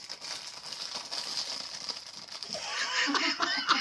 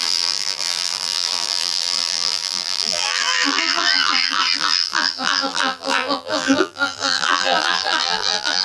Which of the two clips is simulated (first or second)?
second